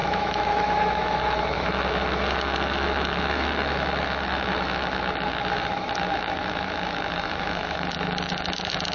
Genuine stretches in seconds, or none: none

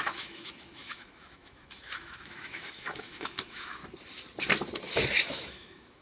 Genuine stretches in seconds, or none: 3.8-5.3

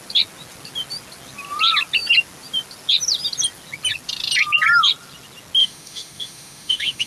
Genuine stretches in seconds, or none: 0.0-5.6

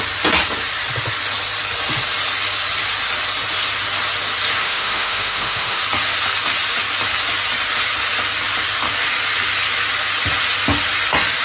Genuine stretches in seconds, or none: 0.0-4.6; 5.8-11.4